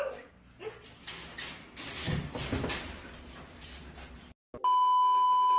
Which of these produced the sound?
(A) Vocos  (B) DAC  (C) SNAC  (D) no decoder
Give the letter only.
D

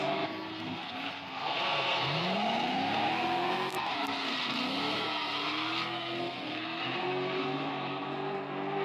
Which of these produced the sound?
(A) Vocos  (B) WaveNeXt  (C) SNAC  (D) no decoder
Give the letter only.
C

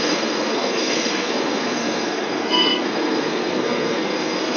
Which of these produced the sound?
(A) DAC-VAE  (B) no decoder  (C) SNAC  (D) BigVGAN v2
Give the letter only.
C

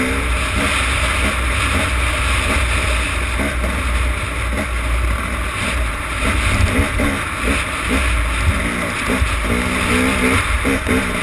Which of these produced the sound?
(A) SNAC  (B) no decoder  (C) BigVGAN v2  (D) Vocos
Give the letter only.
B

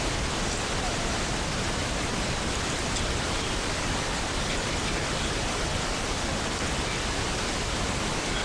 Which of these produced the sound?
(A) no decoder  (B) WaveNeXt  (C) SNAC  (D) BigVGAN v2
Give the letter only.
A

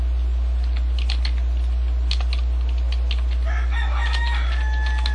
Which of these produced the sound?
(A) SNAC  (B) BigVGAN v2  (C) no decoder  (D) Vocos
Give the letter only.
C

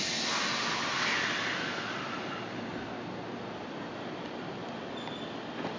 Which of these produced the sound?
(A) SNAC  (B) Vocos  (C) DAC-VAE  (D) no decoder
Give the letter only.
D